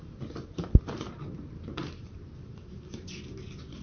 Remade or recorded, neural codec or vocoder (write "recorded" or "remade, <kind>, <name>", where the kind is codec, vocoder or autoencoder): remade, vocoder, BigVGAN v2